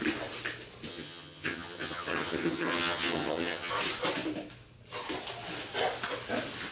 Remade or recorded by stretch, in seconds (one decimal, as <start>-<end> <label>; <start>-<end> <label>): 0.0-0.9 recorded; 0.9-3.7 remade; 3.7-6.7 recorded